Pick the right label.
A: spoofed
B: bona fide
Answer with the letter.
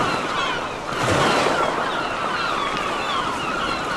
B